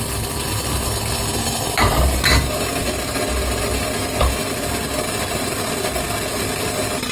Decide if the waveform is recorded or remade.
recorded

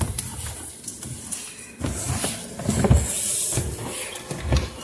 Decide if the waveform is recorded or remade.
recorded